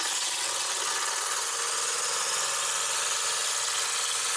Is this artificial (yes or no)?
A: no